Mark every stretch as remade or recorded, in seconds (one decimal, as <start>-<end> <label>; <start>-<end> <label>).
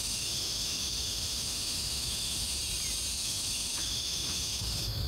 0.0-2.6 remade; 2.6-3.1 recorded; 3.1-5.1 remade